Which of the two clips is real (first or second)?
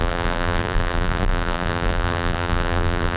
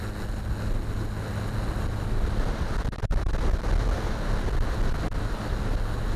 second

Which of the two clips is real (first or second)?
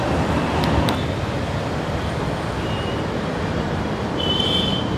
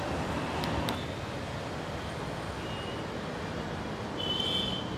second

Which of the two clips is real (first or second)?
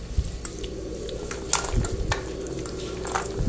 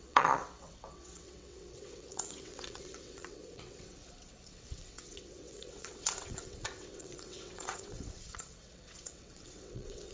first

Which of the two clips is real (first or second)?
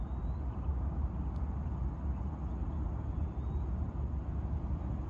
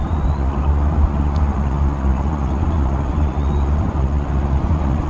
first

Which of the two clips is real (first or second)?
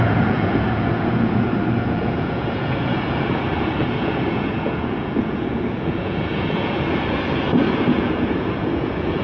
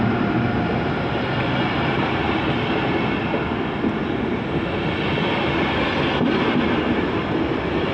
second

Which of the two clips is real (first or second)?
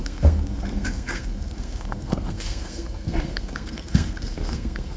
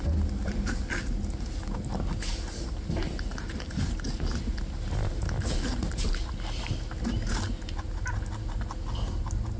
second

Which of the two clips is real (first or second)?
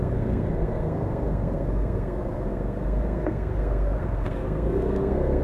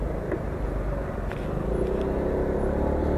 second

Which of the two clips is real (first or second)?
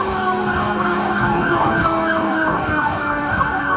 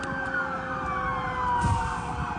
second